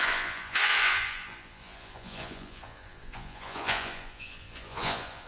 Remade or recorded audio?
remade